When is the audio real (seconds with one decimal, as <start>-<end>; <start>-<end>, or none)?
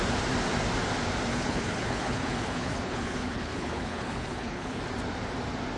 0.0-1.3; 4.8-5.8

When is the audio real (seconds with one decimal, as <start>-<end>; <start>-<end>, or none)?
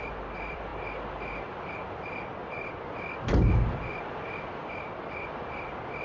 0.7-1.7; 2.4-3.9; 4.6-5.4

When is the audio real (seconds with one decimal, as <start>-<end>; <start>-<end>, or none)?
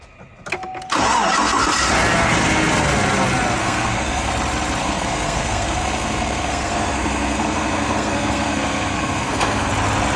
0.0-3.6; 4.3-4.8; 9.7-10.2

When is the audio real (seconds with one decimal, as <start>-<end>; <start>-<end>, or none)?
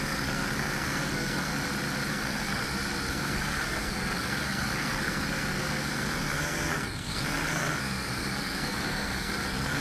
1.5-2.1; 2.6-3.1